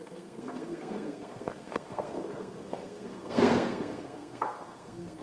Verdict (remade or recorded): remade